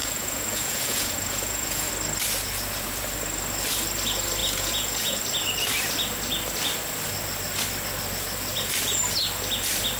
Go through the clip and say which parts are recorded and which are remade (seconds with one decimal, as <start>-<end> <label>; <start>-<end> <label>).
0.0-1.9 remade; 1.9-4.4 recorded; 4.4-5.2 remade; 5.2-10.0 recorded